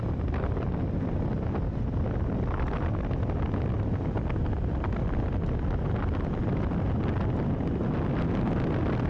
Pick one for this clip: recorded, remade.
recorded